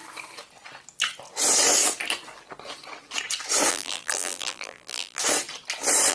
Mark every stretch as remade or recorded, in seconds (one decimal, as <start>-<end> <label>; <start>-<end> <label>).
0.0-3.7 recorded; 3.7-5.2 remade; 5.2-6.1 recorded